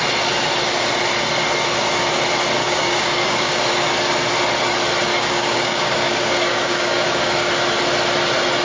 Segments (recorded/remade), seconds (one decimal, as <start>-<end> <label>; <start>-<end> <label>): 0.0-2.6 recorded; 2.6-3.6 remade; 3.6-5.1 recorded; 5.1-7.5 remade; 7.5-8.6 recorded